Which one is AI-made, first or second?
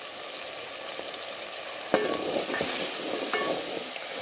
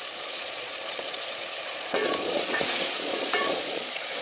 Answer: second